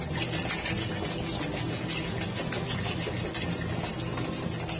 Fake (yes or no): no